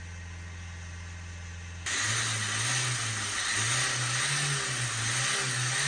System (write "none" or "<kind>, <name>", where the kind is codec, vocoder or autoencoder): none